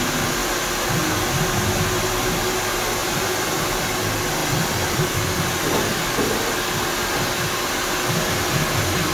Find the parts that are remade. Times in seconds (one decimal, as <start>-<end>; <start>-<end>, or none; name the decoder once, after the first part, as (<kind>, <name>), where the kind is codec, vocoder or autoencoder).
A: 3.0-4.0 (vocoder, BigVGAN v2); 4.4-5.0